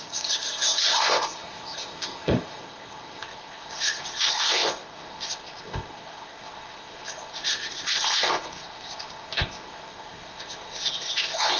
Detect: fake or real fake